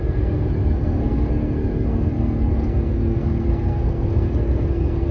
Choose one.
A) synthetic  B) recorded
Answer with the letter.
A